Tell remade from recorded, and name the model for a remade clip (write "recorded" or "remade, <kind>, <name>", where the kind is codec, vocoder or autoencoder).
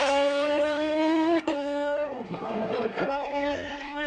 remade, codec, SNAC